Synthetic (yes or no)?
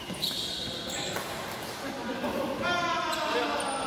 no